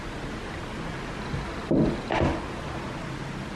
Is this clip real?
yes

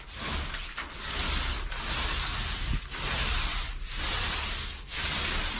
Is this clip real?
yes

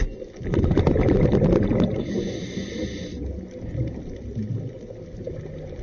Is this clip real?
yes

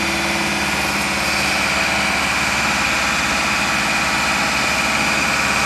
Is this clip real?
no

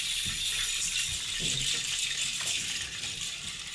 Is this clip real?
yes